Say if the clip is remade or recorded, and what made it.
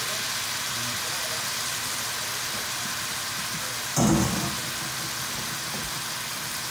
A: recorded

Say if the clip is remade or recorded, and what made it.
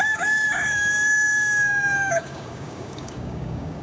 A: remade, codec, DAC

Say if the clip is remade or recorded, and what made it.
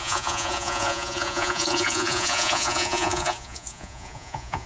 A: remade, vocoder, Vocos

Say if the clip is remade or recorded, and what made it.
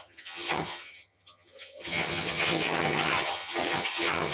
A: remade, vocoder, HiFi-GAN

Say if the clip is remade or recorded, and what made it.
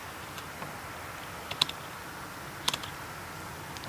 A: recorded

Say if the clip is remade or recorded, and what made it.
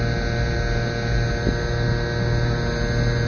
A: recorded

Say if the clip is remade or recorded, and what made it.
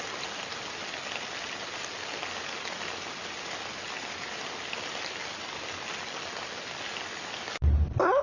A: recorded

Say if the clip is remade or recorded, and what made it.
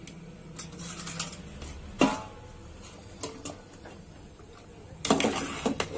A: recorded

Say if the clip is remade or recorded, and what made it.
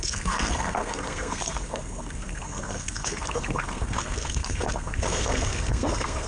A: remade, codec, SNAC